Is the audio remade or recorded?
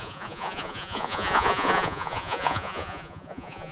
remade